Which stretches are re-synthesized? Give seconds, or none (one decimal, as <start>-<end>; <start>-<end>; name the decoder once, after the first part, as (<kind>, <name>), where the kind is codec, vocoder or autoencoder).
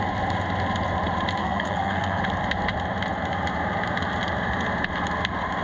1.4-2.2 (codec, SNAC)